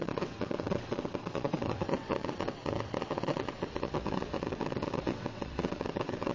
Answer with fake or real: fake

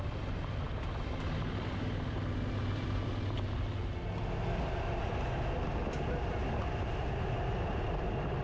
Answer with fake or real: real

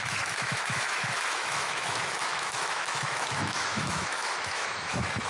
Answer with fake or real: fake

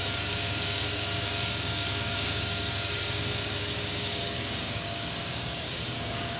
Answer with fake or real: fake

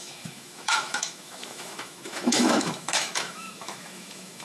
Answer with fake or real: fake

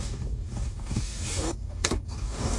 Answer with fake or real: fake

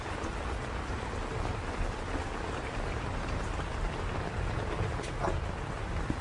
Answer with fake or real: real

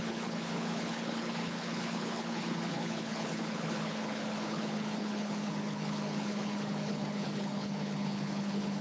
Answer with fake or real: fake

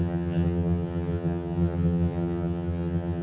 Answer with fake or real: fake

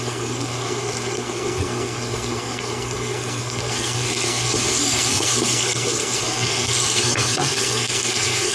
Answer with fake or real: fake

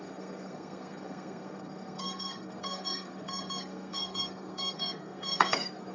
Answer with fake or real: fake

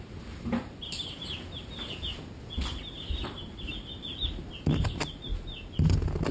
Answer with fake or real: real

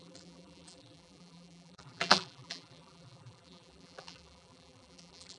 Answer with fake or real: fake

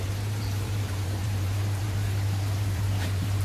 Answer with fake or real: fake